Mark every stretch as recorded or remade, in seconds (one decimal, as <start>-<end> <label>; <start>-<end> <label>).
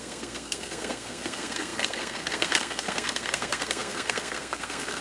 0.0-5.0 remade